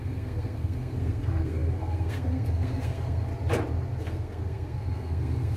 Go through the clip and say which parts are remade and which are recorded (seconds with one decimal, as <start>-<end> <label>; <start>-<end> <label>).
0.0-3.3 remade; 3.3-4.0 recorded; 4.0-5.6 remade